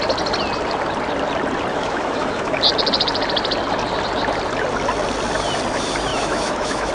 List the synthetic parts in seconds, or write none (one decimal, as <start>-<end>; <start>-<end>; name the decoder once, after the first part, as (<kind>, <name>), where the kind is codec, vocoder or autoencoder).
1.7-2.6 (autoencoder, DAC-VAE); 6.1-6.9